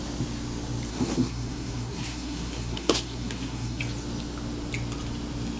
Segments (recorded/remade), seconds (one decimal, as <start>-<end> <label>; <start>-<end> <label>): 0.0-0.9 recorded; 0.9-3.8 remade; 3.8-5.6 recorded